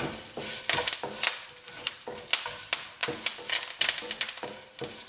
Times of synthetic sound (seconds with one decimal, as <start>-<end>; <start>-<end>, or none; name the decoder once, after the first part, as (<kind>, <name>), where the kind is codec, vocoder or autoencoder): none